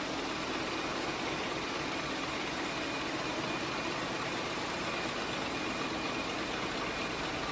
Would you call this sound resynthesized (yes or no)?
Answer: no